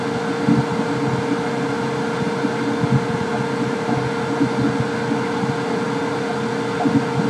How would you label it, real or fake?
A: real